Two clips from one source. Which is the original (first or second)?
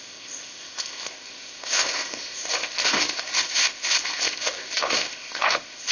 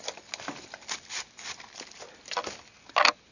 second